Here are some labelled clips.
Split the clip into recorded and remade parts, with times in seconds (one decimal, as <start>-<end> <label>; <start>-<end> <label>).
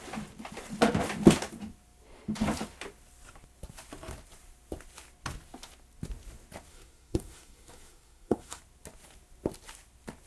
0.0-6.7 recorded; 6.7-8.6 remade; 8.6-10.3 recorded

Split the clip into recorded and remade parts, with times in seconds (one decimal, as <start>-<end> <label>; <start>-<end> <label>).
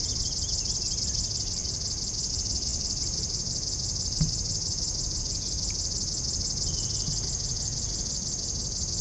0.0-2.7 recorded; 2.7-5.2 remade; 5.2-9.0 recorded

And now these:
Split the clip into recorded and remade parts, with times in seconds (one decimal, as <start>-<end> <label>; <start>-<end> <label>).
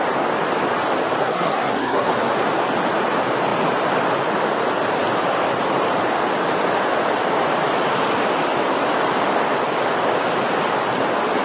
0.0-1.2 recorded; 1.2-2.1 remade; 2.1-11.4 recorded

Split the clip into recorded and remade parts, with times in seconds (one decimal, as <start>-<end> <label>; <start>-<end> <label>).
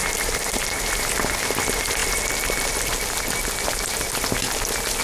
0.0-5.0 recorded